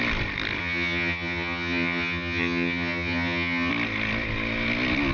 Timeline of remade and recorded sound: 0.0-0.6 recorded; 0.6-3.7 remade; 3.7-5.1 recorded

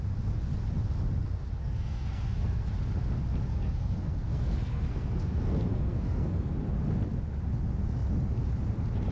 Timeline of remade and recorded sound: 0.0-1.6 recorded; 1.6-2.7 remade; 2.7-3.5 recorded; 3.5-6.5 remade; 6.5-9.1 recorded